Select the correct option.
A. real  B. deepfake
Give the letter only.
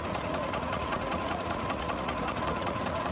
B